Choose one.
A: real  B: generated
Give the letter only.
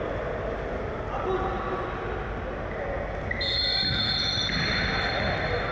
A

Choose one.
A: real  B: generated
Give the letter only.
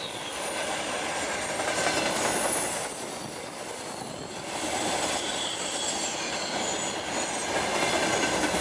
A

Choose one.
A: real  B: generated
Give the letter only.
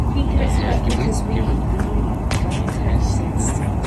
A